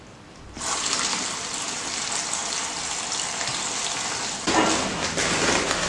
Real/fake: real